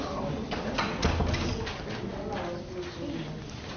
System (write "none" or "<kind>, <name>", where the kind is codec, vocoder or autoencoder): none